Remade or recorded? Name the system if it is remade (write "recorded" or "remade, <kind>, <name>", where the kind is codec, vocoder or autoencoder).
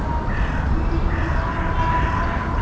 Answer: recorded